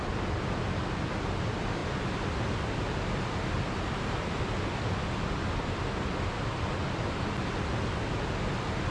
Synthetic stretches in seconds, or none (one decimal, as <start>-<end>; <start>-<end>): none